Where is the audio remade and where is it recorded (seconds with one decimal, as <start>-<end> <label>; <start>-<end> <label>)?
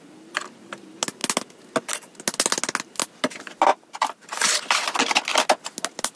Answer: 0.0-3.7 recorded; 3.7-4.6 remade; 4.6-6.2 recorded